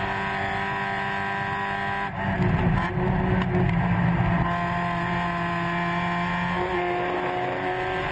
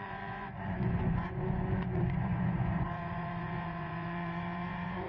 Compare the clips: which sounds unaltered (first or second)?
first